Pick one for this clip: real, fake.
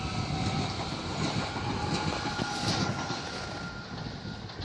real